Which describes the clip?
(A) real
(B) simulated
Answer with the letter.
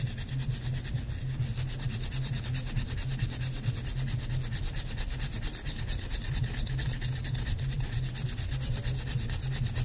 A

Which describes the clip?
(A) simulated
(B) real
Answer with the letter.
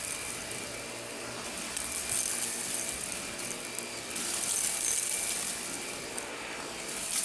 B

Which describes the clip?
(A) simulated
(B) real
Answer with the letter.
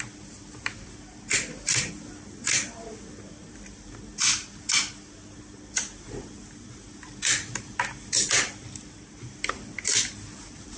B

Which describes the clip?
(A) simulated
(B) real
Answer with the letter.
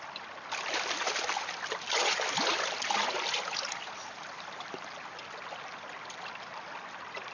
B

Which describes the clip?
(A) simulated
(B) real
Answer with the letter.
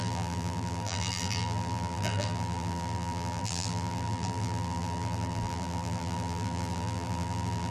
A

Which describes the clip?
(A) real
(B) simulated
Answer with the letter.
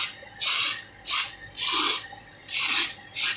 A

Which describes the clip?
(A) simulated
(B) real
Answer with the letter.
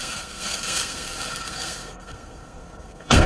A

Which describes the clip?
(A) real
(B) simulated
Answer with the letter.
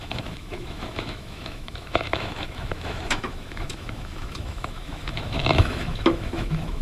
B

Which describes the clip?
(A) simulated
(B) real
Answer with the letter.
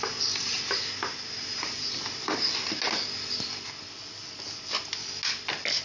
B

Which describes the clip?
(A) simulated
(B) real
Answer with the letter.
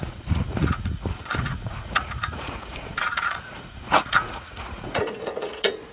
A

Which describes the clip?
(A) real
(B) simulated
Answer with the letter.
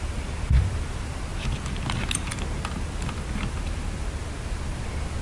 A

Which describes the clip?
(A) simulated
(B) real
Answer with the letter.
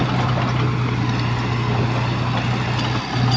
B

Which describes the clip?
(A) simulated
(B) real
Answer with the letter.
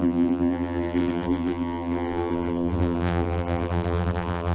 A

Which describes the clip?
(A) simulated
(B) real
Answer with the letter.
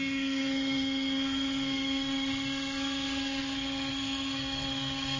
A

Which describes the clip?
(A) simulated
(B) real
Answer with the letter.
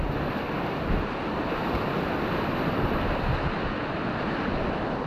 B